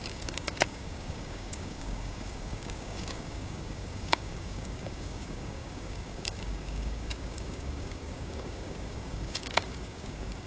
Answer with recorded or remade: remade